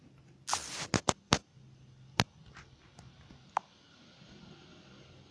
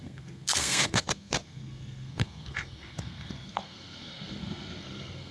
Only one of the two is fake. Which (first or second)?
second